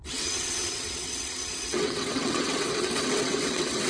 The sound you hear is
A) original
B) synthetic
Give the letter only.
B